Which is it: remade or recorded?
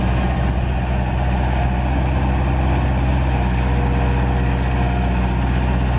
recorded